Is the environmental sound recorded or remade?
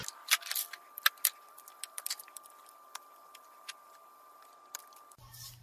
recorded